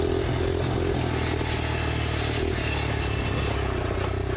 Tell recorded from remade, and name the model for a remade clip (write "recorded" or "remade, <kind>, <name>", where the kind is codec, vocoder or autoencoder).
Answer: recorded